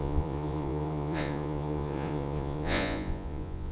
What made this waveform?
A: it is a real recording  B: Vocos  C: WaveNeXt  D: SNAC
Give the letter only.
B